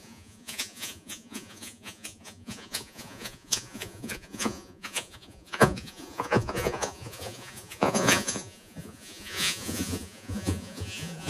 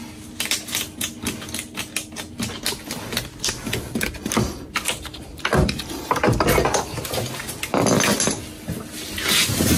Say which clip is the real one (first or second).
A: second